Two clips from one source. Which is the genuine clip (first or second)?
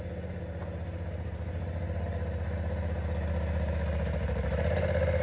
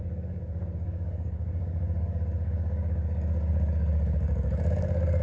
first